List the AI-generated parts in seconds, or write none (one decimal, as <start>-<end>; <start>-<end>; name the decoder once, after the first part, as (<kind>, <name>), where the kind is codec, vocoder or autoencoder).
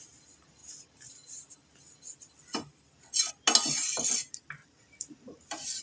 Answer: 4.6-5.8 (vocoder, BigVGAN v2)